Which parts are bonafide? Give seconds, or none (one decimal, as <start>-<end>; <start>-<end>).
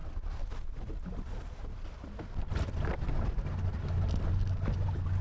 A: 0.0-5.2